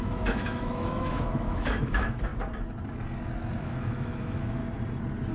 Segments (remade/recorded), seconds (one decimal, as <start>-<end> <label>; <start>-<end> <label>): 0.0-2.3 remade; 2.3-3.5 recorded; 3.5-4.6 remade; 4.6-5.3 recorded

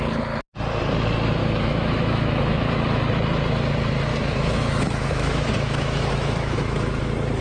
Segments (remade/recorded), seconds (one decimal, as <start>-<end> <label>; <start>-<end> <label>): 0.0-1.4 recorded; 1.4-3.0 remade; 3.0-4.1 recorded; 4.1-7.0 remade; 7.0-7.4 recorded

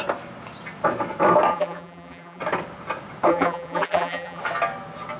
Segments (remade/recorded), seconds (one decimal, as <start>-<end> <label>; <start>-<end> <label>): 0.0-1.5 recorded; 1.5-2.4 remade; 2.4-3.3 recorded; 3.3-4.4 remade; 4.4-5.2 recorded

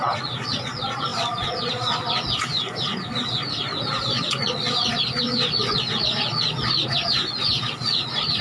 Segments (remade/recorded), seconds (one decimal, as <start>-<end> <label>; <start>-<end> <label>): 0.0-8.4 remade

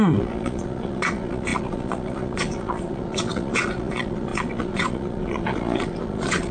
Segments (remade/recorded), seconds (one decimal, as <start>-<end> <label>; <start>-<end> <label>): 0.0-6.5 remade

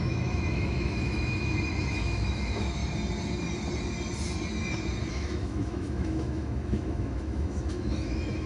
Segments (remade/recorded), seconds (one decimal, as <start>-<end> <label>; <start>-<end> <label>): 0.0-2.8 remade; 2.8-5.1 recorded; 5.1-8.5 remade